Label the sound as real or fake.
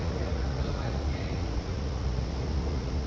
fake